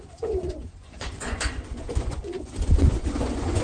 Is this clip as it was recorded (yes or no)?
no